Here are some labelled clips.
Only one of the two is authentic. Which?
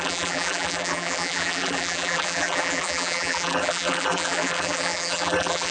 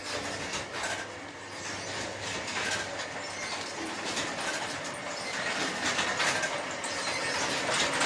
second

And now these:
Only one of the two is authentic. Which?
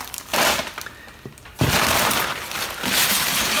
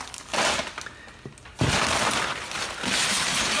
second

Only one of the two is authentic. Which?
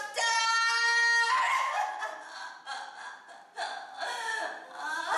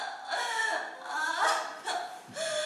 first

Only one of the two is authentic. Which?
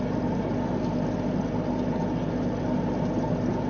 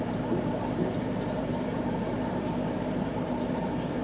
first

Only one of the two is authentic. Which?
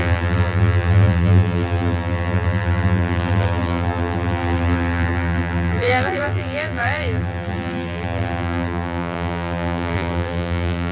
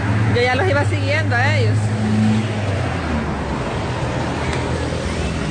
second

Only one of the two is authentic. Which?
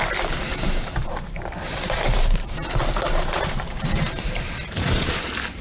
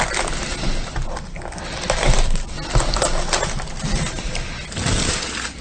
second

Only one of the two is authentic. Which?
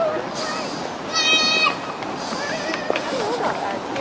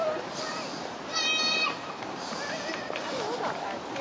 first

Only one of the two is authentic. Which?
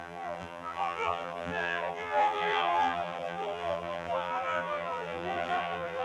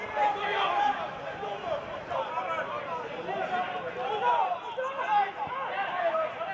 second